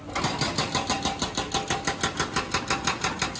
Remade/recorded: recorded